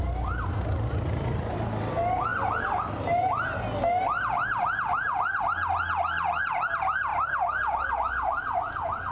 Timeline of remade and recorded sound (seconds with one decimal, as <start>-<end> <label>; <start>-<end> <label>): 0.0-7.1 recorded; 7.1-7.9 remade; 7.9-9.1 recorded